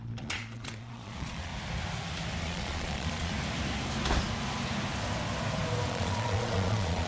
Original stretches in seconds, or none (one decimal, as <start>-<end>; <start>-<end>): 1.5-2.4; 3.3-5.9